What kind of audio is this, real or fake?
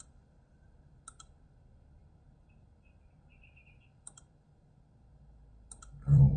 fake